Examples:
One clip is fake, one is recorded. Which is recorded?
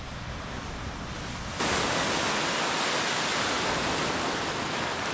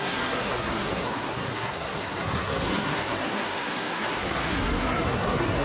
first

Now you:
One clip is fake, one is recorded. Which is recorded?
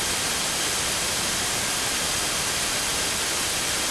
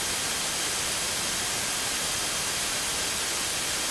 second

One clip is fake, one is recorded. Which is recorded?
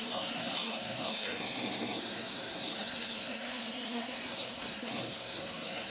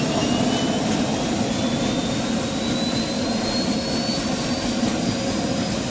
second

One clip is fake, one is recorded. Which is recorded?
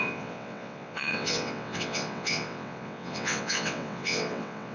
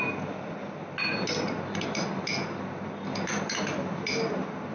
second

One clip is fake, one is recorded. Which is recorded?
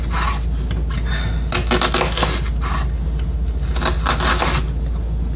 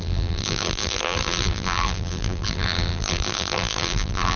first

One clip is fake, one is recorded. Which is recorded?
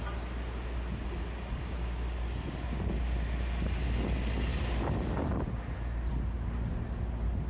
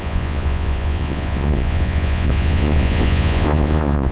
first